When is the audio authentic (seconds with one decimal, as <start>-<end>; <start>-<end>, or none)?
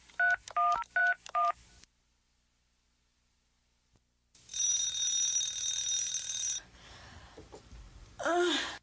0.0-1.0; 1.7-4.5; 8.1-8.8